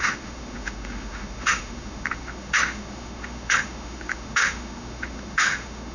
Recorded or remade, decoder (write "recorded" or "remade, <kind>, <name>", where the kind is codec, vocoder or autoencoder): remade, autoencoder, DAC-VAE